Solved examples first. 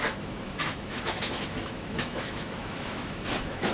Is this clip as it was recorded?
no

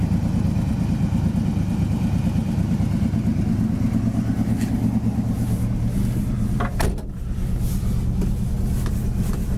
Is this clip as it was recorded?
yes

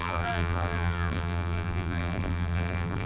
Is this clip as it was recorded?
no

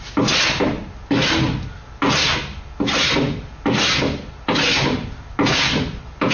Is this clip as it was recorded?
yes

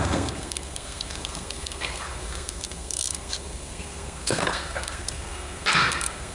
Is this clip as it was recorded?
no